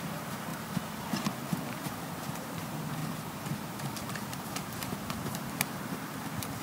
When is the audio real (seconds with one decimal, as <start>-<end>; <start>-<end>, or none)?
0.5-1.6